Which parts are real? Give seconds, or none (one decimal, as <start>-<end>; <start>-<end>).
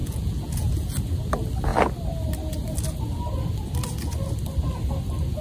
0.7-5.4